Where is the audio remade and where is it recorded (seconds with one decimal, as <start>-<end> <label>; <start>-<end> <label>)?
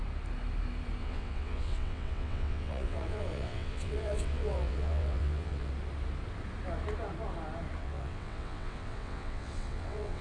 0.0-1.0 recorded; 1.0-5.7 remade; 5.7-7.8 recorded; 7.8-10.2 remade